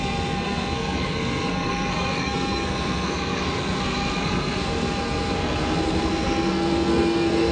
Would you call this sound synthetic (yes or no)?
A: yes